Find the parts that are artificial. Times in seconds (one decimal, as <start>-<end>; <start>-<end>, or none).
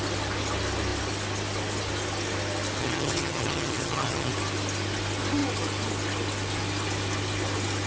2.8-4.3